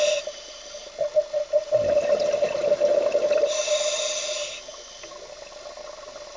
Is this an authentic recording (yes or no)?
yes